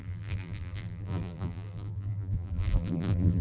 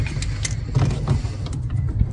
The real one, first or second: second